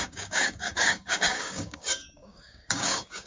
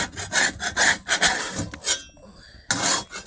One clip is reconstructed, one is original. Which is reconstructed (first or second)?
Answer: first